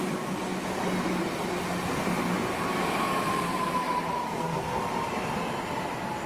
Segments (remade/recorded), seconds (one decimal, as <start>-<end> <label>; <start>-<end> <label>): 0.0-4.2 recorded; 4.2-4.8 remade; 4.8-6.3 recorded